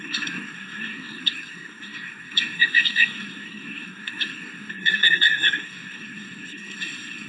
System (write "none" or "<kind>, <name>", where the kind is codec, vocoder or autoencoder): codec, SNAC